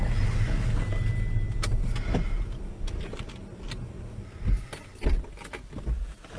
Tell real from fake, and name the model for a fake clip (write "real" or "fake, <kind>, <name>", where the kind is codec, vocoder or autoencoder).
real